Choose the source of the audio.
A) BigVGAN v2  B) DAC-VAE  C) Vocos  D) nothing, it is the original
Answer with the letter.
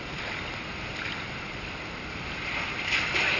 D